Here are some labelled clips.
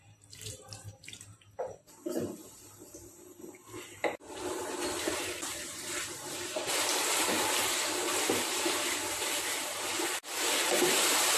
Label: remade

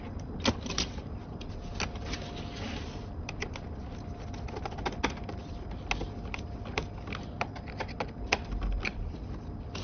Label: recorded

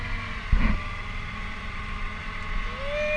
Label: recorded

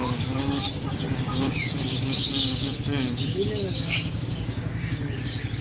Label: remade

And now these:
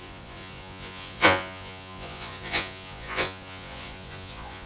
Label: remade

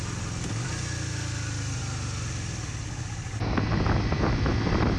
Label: recorded